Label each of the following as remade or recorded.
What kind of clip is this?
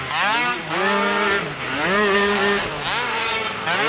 recorded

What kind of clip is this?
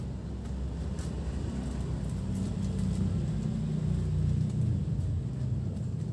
recorded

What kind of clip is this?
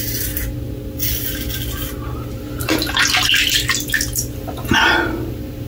recorded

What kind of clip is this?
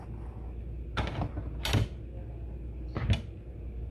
recorded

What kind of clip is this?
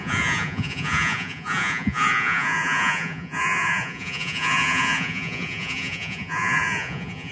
remade